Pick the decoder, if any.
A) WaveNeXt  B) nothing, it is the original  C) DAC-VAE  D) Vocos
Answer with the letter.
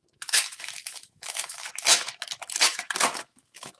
C